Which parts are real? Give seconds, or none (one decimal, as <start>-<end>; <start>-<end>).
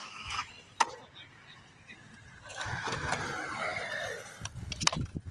0.5-2.5; 3.1-5.3